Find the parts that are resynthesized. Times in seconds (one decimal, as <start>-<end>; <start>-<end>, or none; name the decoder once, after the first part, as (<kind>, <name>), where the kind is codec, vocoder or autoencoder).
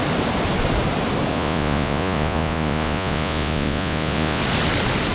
1.3-4.4 (vocoder, Vocos)